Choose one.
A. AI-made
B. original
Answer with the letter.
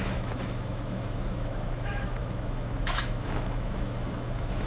A